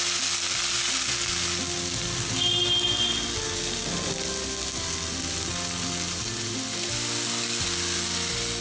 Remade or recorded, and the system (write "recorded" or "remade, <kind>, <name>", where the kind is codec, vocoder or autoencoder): recorded